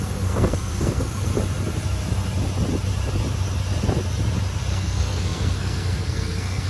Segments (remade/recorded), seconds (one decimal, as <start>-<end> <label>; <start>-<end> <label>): 0.0-1.3 remade; 1.3-4.7 recorded; 4.7-6.7 remade